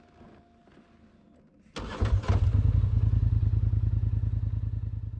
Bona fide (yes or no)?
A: yes